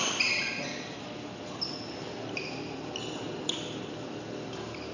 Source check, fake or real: real